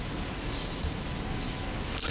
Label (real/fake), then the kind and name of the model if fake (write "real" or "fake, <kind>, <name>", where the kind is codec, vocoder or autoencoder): real